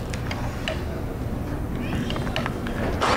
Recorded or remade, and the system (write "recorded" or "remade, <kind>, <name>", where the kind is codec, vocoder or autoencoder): recorded